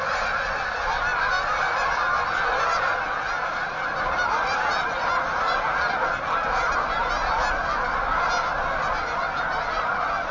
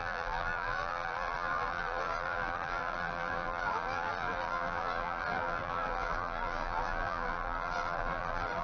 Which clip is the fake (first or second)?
second